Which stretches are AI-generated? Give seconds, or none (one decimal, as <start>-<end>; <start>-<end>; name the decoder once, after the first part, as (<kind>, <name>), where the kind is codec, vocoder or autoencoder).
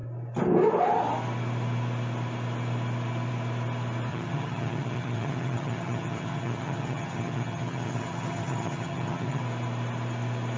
4.1-9.4 (vocoder, HiFi-GAN)